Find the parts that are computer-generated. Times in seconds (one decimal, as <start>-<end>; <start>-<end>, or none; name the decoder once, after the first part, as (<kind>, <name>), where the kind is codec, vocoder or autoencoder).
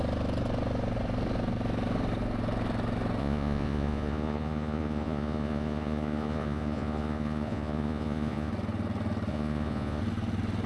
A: 3.2-8.5 (vocoder, Vocos); 9.3-10.0